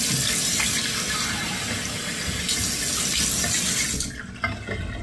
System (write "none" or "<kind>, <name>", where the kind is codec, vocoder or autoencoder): none